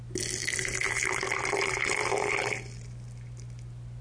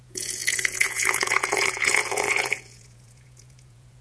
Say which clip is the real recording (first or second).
first